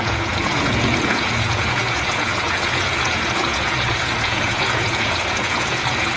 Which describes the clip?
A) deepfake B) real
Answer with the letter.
A